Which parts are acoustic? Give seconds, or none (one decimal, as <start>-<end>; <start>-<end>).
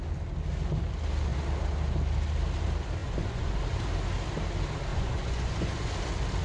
0.0-3.0; 3.6-4.9; 5.9-6.4